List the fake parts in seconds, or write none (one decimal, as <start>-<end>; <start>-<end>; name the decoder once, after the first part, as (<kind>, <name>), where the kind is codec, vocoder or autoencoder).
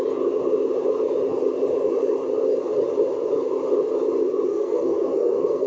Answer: 4.5-5.7 (codec, SNAC)